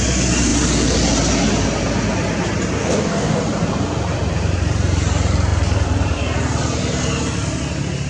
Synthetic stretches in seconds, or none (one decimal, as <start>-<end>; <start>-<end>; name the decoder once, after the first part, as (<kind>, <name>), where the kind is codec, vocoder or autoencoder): 2.8-3.4 (codec, DAC)